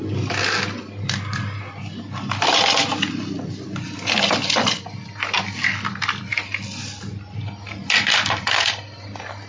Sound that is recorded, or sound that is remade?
recorded